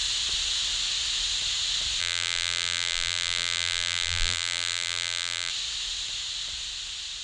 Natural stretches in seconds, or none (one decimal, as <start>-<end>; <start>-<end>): 0.0-2.0; 5.5-7.2